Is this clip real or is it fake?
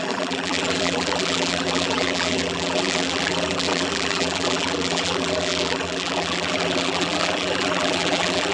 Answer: fake